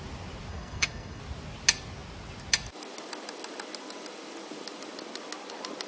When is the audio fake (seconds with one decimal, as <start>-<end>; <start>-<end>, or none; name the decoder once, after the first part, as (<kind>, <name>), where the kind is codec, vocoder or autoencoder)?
0.5-1.2 (codec, SNAC)